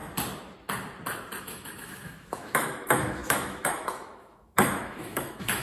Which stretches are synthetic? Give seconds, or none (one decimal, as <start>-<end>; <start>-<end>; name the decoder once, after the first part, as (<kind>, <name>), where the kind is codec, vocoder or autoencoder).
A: 1.4-5.6 (autoencoder, DAC-VAE)